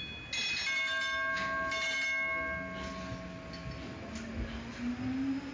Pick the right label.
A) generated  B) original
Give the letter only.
B